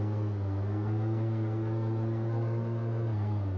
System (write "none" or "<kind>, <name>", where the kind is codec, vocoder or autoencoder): codec, SNAC